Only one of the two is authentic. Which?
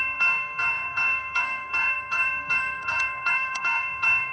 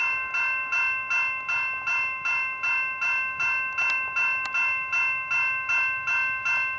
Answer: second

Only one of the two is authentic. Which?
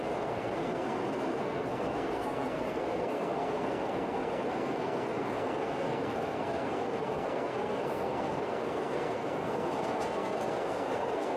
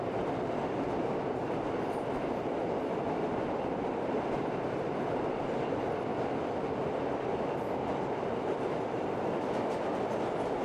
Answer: second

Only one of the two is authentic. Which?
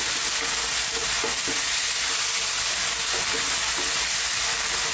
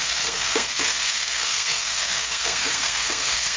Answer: first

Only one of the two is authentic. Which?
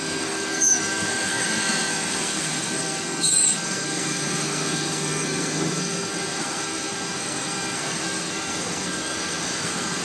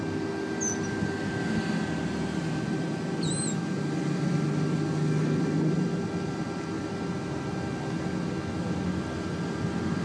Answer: second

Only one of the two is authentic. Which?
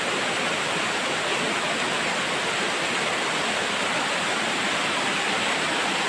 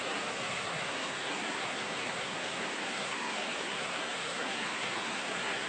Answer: first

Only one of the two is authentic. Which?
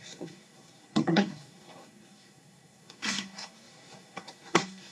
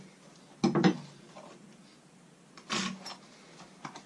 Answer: second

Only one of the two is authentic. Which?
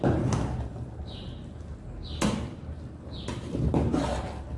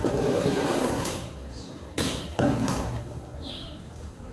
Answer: first